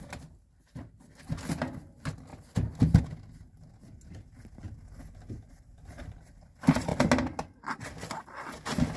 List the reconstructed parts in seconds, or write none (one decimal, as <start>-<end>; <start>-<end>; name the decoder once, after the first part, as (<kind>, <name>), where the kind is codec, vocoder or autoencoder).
none